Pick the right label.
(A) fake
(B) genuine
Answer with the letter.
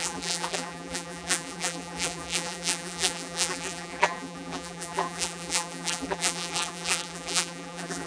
A